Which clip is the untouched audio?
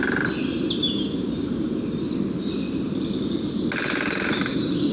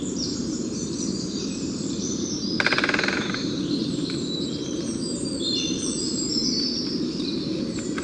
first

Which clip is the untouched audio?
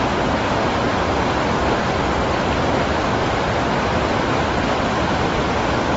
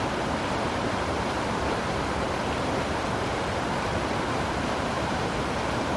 first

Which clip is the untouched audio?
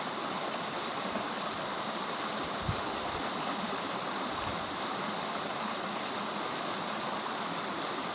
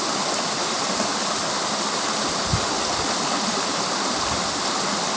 second